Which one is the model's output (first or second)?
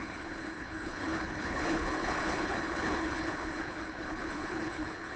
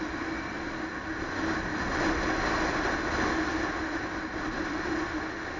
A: first